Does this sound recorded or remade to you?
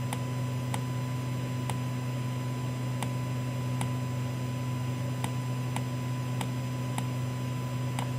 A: recorded